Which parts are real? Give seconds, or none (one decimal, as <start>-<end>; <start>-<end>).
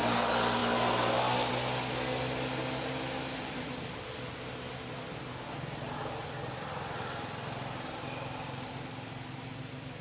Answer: 0.0-10.0